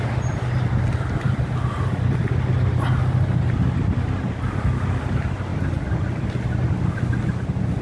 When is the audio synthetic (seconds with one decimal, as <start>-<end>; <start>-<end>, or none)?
none